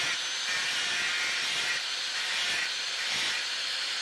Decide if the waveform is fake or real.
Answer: real